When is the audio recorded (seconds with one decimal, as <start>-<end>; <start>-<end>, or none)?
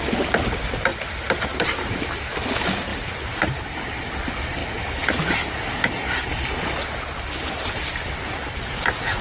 0.0-0.9; 2.2-2.9; 3.6-9.2